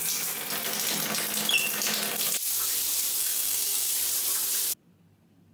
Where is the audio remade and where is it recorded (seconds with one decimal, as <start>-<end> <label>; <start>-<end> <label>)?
0.0-3.2 recorded; 3.2-3.9 remade; 3.9-5.5 recorded